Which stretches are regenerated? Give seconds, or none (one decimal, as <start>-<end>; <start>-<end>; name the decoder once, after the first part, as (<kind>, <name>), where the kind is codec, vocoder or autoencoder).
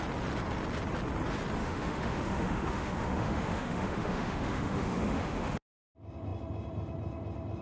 1.6-5.8 (autoencoder, DAC-VAE)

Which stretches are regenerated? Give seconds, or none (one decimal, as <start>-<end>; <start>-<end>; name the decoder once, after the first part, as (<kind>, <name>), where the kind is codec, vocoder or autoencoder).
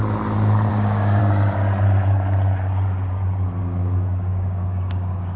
0.7-1.2 (codec, DAC); 3.6-5.4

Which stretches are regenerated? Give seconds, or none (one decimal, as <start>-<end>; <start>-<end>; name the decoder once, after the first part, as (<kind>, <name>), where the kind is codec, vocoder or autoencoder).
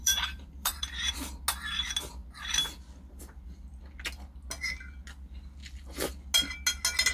0.0-1.1 (vocoder, BigVGAN v2)